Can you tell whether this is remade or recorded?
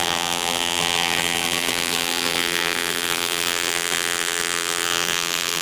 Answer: remade